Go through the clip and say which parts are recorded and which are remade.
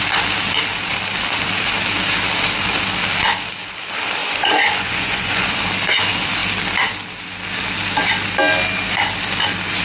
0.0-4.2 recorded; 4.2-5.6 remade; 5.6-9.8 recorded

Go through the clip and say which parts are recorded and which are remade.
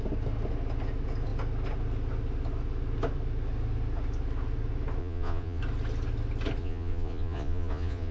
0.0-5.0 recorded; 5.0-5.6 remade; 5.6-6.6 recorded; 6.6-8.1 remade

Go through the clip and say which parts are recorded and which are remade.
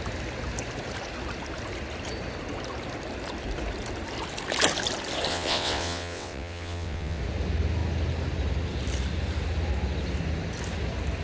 0.0-5.3 recorded; 5.3-7.2 remade; 7.2-11.2 recorded